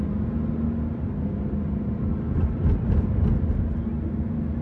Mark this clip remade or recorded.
recorded